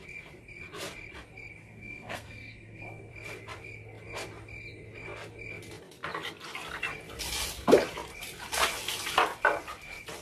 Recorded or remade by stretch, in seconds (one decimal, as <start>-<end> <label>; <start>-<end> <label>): 0.0-1.6 recorded; 1.6-3.1 remade; 3.1-10.2 recorded